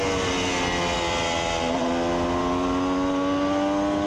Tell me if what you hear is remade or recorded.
recorded